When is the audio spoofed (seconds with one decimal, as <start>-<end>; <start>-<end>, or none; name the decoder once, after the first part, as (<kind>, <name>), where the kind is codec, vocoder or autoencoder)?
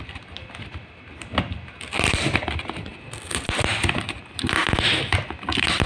none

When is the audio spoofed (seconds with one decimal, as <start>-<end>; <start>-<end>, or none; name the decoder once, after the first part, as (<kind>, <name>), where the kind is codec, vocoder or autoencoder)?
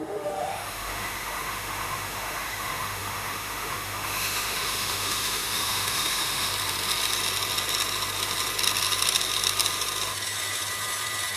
0.0-6.5 (autoencoder, DAC-VAE)